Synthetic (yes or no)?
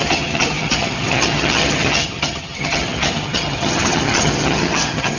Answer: yes